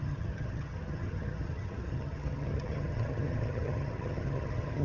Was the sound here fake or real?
fake